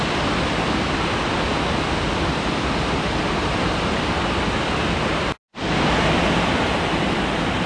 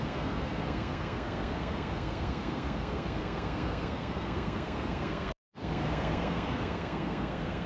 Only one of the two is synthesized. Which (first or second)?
second